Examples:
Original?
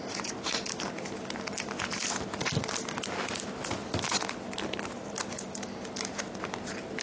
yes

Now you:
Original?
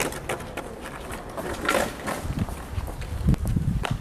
yes